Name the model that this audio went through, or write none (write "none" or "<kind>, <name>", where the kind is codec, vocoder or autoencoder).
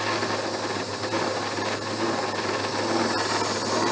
none